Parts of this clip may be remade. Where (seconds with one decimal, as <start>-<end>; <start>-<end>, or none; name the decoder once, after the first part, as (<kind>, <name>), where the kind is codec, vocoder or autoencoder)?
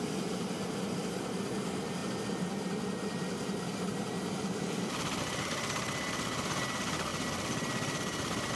none